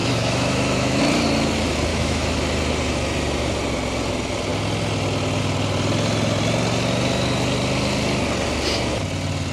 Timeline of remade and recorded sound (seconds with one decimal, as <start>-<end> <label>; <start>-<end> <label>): 0.0-1.0 remade; 1.0-1.9 recorded; 1.9-2.4 remade; 2.4-9.5 recorded